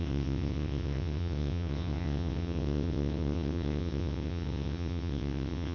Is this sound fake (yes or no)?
yes